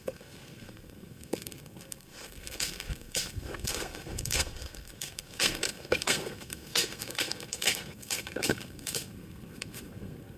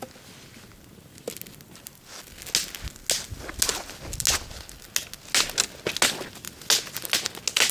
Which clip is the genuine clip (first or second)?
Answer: second